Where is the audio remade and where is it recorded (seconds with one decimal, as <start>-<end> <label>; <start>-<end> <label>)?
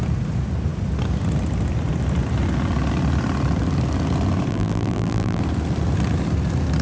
0.0-4.5 recorded; 4.5-5.4 remade; 5.4-6.8 recorded